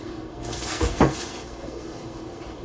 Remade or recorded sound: remade